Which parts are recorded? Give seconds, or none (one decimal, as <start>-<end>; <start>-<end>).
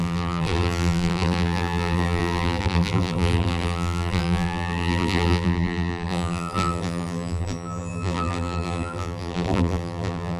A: none